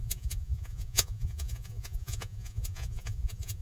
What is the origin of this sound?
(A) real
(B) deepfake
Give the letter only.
B